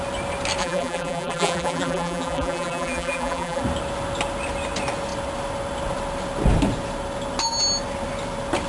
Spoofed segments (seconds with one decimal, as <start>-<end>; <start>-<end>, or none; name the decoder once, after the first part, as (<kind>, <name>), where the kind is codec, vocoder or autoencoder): 0.6-3.6 (vocoder, BigVGAN v2)